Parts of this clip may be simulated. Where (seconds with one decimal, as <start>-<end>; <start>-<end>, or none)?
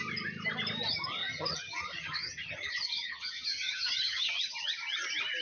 1.2-4.4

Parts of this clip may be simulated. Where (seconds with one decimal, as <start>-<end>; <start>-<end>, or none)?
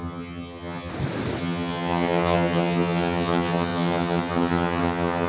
0.0-0.9; 1.4-5.3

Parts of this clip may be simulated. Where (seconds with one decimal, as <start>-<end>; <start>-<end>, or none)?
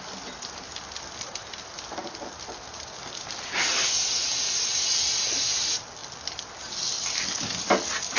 none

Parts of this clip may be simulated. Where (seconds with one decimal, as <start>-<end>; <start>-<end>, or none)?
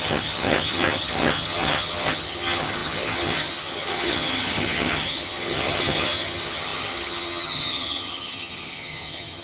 0.0-9.4